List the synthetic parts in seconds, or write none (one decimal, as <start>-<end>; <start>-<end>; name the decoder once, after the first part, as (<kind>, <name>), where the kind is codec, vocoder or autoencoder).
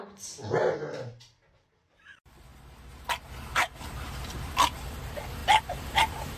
0.0-0.4 (vocoder, BigVGAN v2); 1.1-2.5; 3.5-6.4